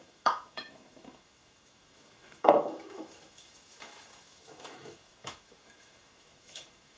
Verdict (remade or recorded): remade